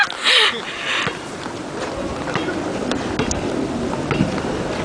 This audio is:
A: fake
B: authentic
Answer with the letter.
B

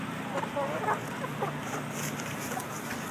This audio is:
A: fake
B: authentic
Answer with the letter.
B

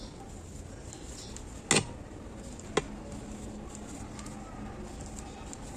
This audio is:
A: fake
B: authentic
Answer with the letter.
B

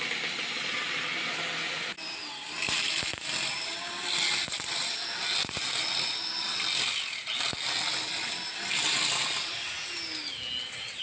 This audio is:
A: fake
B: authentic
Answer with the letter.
B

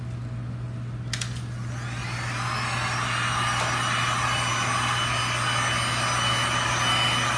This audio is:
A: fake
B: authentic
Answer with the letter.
B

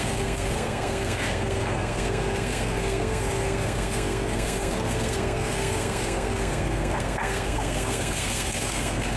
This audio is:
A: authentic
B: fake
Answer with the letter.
B